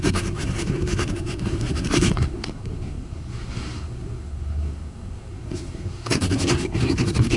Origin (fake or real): fake